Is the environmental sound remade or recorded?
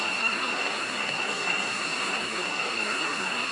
remade